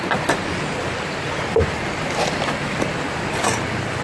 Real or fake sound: real